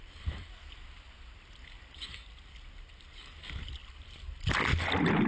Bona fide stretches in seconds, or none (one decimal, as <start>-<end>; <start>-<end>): 0.0-5.3